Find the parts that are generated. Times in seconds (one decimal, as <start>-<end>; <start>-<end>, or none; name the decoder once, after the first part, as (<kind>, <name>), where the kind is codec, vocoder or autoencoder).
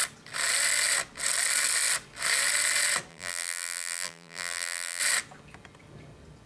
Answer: 3.1-5.0 (vocoder, BigVGAN v2)